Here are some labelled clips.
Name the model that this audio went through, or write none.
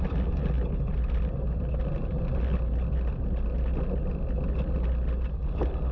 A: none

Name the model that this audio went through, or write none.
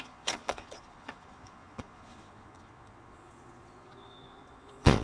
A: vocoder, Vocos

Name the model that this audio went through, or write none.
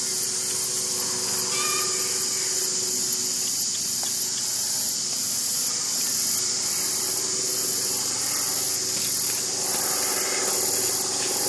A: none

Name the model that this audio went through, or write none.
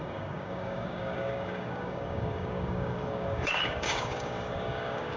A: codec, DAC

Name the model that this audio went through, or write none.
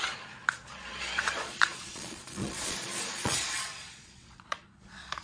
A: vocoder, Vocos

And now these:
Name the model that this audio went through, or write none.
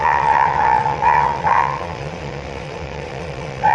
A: vocoder, WaveNeXt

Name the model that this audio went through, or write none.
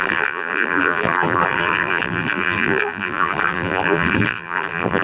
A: vocoder, BigVGAN v2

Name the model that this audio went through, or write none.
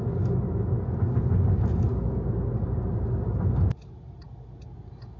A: none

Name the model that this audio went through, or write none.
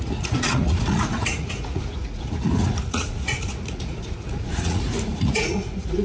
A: vocoder, Vocos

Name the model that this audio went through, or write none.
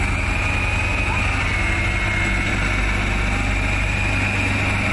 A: none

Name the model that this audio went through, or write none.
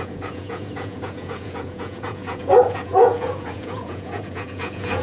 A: vocoder, Vocos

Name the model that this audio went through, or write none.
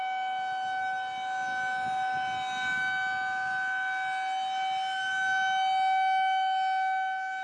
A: none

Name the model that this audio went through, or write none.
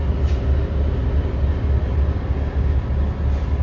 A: none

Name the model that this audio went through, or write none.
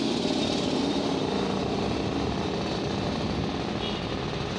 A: vocoder, BigVGAN v2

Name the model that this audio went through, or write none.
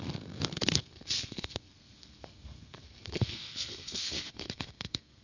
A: codec, SNAC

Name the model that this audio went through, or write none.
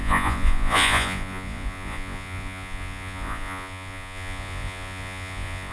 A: vocoder, Vocos